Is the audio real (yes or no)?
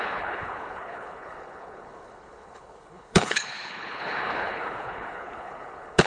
no